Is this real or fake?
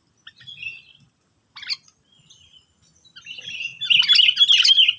real